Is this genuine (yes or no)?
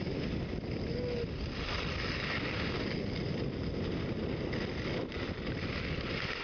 yes